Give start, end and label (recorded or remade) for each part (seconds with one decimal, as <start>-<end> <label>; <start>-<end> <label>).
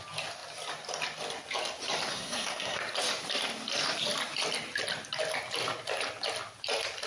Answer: 0.0-2.1 recorded; 2.1-2.8 remade; 2.8-7.1 recorded